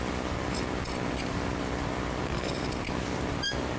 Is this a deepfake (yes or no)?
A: no